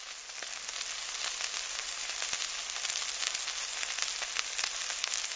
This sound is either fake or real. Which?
real